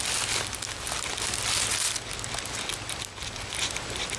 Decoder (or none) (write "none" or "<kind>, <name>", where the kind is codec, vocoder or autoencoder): none